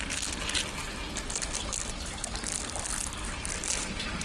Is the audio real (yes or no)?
yes